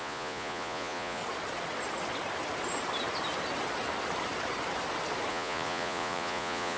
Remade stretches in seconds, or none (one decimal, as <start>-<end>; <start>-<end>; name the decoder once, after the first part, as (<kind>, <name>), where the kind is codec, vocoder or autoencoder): 0.0-1.2 (vocoder, Vocos); 5.3-6.8